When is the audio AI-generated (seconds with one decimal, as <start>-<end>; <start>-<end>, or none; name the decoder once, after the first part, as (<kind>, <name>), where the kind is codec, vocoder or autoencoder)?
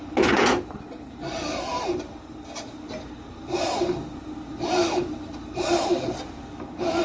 none